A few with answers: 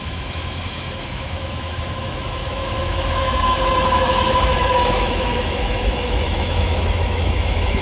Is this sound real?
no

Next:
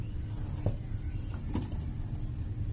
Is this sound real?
yes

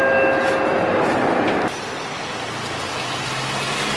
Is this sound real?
yes